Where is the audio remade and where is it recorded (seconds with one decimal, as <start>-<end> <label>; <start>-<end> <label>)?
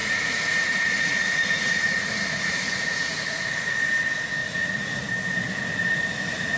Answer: 0.0-3.9 remade; 3.9-4.4 recorded; 4.4-5.1 remade; 5.1-6.6 recorded